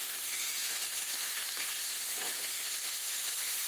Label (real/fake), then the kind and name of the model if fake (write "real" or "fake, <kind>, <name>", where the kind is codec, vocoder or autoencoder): fake, autoencoder, DAC-VAE